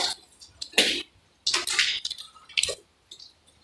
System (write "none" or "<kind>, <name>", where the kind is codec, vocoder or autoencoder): none